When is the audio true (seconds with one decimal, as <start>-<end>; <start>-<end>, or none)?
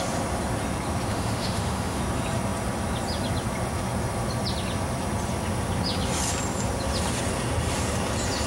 0.0-1.1; 2.0-8.5